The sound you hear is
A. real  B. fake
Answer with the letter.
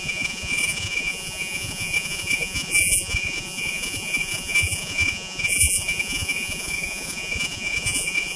B